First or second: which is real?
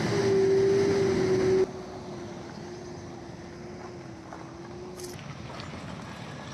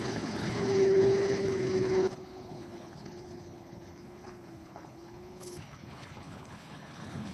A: first